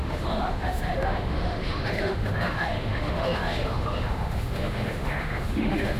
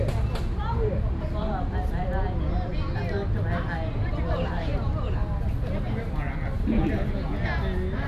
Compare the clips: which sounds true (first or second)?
second